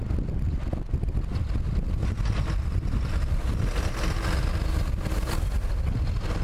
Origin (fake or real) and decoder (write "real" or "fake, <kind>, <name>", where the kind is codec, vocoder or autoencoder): real